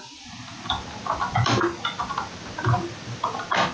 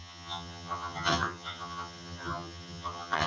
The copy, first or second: second